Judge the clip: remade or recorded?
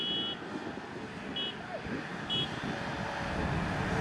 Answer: recorded